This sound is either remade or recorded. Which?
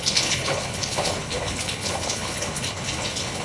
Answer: remade